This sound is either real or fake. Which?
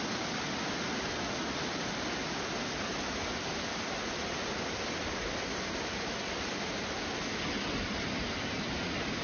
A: real